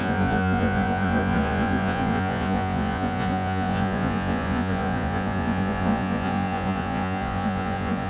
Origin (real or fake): fake